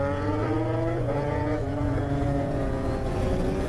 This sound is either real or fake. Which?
fake